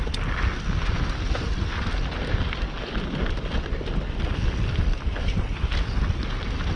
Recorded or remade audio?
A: recorded